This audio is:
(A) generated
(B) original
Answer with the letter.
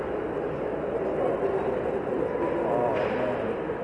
B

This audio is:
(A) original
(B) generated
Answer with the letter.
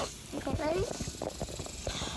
A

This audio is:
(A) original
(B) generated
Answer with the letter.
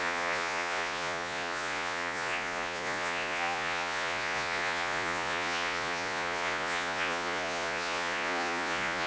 B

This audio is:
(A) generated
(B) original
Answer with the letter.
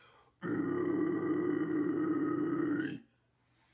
B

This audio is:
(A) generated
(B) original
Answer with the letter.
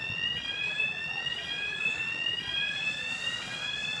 A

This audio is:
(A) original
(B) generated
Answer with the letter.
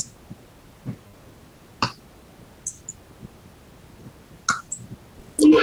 A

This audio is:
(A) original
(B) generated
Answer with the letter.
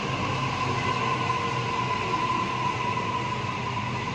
A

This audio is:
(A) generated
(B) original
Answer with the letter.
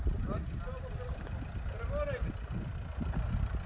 B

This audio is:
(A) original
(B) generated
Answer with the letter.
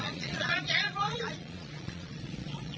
B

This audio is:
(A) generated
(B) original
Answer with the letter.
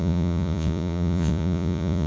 A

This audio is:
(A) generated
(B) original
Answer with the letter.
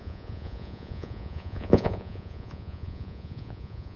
A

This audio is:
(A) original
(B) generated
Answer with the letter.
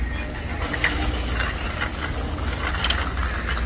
A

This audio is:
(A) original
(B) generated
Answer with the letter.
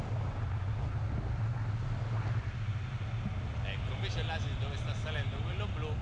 A